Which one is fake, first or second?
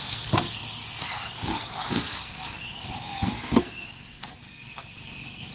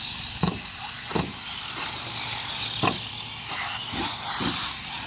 first